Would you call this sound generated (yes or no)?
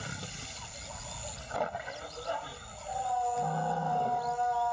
no